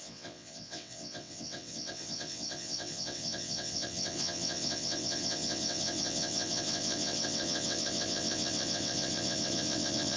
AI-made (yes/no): yes